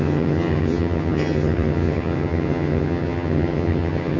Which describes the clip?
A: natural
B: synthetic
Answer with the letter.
B